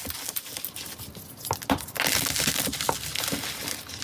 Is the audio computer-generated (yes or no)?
no